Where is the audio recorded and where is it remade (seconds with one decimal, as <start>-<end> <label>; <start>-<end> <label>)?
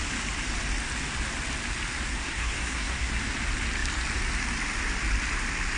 0.0-2.1 recorded; 2.1-3.1 remade; 3.1-5.8 recorded